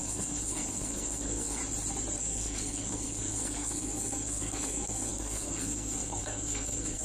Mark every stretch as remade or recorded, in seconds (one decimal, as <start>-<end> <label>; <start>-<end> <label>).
0.0-1.6 remade; 1.6-2.2 recorded; 2.2-7.0 remade